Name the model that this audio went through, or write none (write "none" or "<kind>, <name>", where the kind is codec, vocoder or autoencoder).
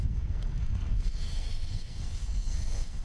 codec, SNAC